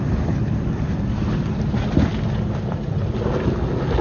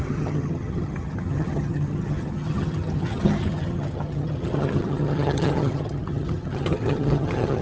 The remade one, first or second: second